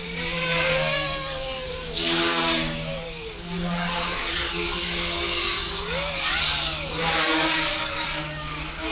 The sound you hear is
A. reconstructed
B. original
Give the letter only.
A